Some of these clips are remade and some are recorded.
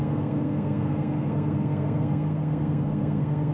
remade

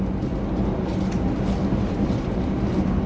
recorded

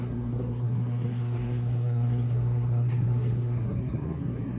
remade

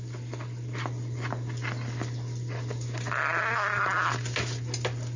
recorded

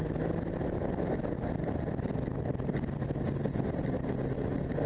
recorded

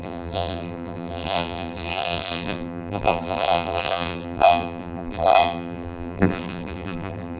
remade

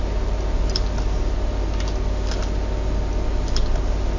recorded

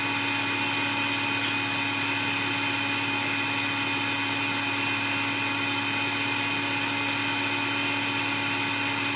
recorded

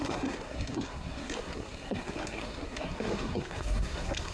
remade